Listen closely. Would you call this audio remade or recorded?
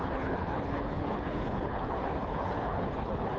remade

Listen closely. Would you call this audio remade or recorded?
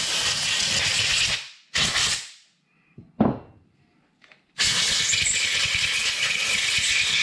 recorded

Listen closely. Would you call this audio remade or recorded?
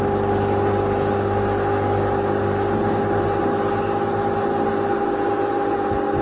recorded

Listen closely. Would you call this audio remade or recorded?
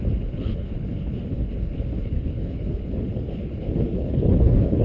remade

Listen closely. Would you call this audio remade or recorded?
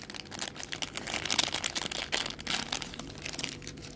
recorded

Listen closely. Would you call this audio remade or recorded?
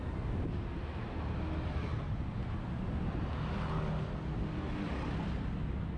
recorded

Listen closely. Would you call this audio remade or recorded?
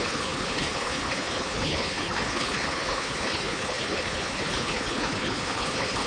remade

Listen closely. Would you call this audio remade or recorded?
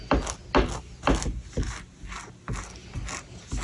recorded